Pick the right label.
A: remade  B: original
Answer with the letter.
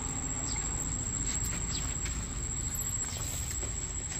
B